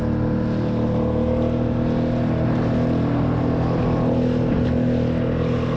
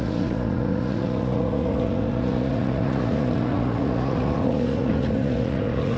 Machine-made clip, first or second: second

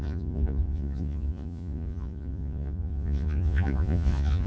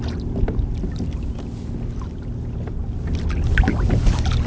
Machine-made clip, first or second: first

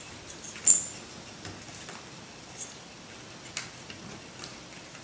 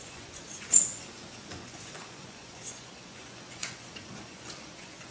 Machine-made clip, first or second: second